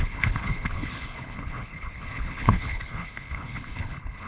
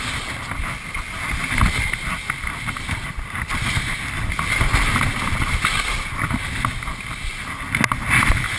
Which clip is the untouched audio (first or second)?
second